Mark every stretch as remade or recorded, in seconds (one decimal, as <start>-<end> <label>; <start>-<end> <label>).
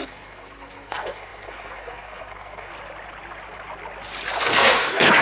0.0-2.7 remade; 2.7-4.4 recorded; 4.4-5.2 remade